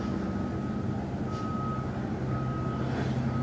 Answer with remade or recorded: recorded